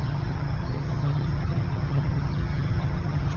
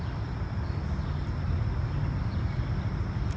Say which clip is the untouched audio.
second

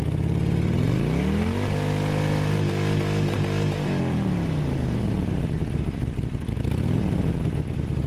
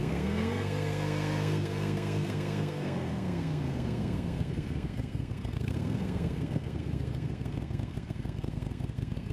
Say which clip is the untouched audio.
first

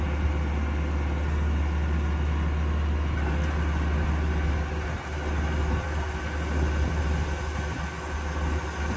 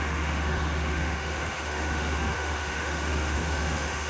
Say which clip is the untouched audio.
first